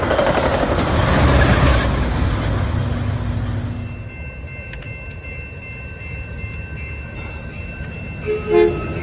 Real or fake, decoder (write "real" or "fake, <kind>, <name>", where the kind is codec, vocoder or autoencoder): real